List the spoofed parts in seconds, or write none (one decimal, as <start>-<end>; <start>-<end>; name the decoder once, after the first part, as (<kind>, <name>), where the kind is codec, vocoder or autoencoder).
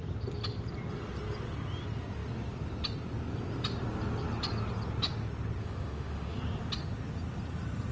5.6-6.4 (autoencoder, DAC-VAE)